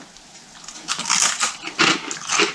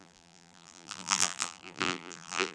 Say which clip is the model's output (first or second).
second